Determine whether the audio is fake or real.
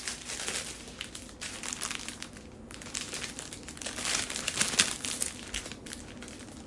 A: real